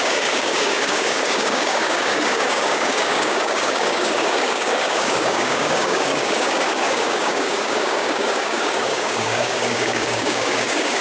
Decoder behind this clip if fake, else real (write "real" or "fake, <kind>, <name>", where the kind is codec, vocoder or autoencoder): fake, codec, DAC